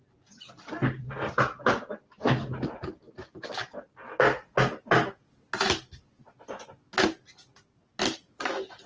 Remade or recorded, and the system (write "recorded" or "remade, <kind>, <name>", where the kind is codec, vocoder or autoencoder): recorded